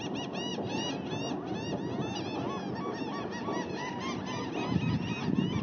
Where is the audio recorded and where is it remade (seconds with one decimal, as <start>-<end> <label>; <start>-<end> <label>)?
0.0-5.6 recorded